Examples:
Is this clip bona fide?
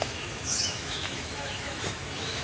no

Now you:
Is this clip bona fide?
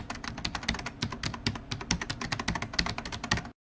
yes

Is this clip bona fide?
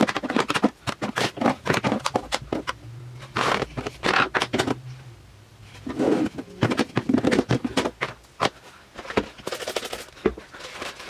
yes